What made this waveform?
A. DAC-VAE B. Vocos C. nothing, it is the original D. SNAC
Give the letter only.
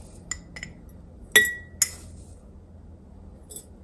C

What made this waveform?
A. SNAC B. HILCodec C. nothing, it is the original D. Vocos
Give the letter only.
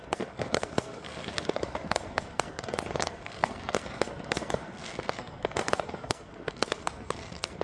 A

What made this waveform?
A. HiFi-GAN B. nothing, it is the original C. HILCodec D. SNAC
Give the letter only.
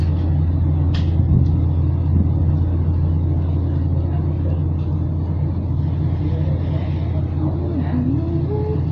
B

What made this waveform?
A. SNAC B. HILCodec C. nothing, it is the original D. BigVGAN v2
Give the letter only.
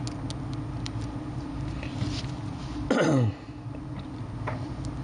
C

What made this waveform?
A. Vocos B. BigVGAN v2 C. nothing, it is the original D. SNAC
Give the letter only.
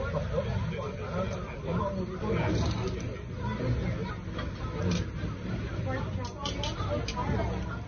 C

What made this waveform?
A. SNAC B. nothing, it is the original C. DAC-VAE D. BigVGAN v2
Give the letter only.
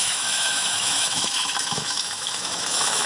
C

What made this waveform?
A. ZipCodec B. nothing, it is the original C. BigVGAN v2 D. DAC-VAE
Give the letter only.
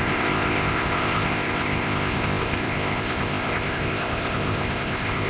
A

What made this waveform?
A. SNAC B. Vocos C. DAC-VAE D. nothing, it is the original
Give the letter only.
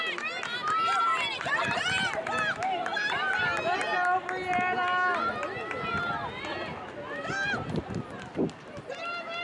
D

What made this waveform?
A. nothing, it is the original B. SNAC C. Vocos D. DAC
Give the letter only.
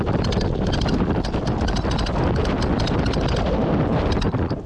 A